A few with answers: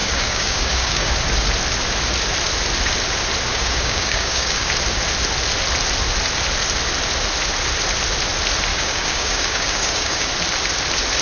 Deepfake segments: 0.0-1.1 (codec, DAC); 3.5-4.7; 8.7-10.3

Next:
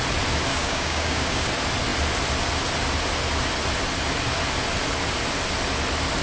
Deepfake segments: 0.5-1.5 (codec, DAC)